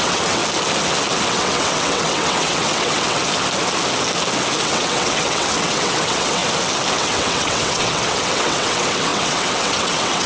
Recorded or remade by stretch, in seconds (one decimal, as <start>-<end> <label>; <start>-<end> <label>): 0.0-0.4 remade; 0.4-1.3 recorded; 1.3-3.2 remade; 3.2-4.6 recorded; 4.6-6.4 remade; 6.4-7.0 recorded; 7.0-10.3 remade